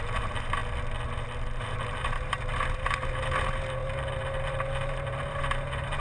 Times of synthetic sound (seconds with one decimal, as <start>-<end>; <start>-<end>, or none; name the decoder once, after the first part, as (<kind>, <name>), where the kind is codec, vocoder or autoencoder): 0.0-0.6 (vocoder, BigVGAN v2); 1.6-6.0